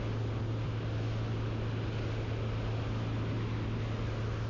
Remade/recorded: recorded